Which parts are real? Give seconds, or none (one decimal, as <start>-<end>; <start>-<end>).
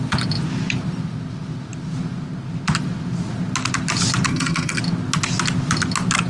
0.0-4.3; 4.8-6.3